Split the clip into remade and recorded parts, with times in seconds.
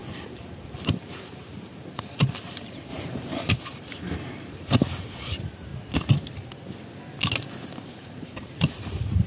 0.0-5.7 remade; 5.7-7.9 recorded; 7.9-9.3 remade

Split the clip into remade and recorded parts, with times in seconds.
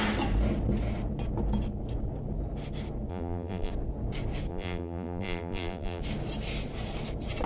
0.0-3.1 recorded; 3.1-3.7 remade; 3.7-4.5 recorded; 4.5-6.0 remade; 6.0-7.5 recorded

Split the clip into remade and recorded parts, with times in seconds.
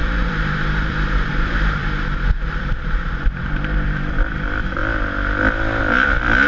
0.0-1.8 remade; 1.8-2.6 recorded; 2.6-4.8 remade; 4.8-5.8 recorded; 5.8-6.5 remade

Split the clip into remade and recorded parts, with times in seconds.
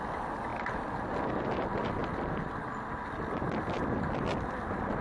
0.0-5.0 recorded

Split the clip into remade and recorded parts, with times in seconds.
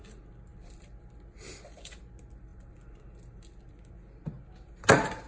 0.0-5.3 recorded